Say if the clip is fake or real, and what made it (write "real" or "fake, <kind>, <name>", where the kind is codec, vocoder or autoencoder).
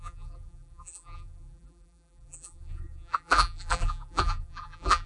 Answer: fake, vocoder, BigVGAN v2